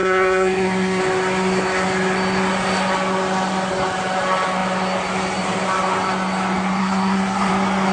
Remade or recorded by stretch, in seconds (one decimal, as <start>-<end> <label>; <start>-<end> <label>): 0.0-1.0 remade; 1.0-6.8 recorded; 6.8-7.5 remade; 7.5-7.9 recorded